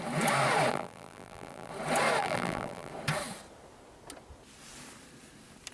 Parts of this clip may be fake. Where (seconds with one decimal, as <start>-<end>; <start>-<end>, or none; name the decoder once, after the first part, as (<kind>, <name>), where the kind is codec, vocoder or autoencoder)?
0.7-1.7 (vocoder, BigVGAN v2); 2.2-2.9